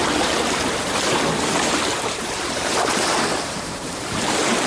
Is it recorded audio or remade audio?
remade